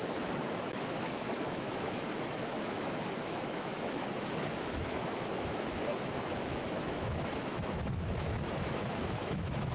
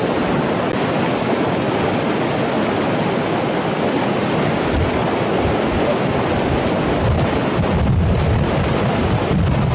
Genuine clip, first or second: second